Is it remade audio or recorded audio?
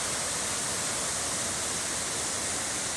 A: recorded